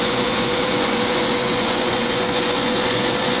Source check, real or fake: fake